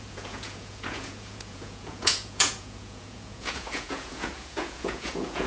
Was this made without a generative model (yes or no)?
no